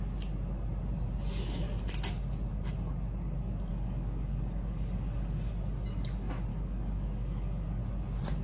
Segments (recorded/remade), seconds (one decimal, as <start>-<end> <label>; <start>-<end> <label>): 0.0-3.7 recorded; 3.7-5.5 remade; 5.5-6.5 recorded; 6.5-7.8 remade; 7.8-8.4 recorded